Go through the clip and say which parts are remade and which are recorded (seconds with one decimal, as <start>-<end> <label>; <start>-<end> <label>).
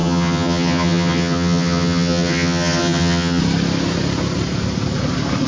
0.0-3.4 remade; 3.4-5.5 recorded